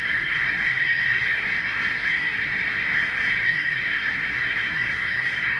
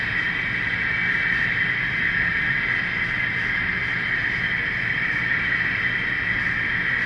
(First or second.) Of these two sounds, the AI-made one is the first